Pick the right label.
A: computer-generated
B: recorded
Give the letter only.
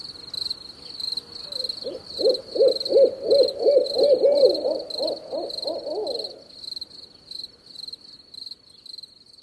B